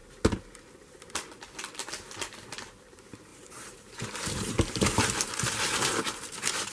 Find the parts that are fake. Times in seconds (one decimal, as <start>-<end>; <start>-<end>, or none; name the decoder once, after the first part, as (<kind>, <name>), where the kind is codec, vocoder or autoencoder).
3.3-6.7 (vocoder, BigVGAN v2)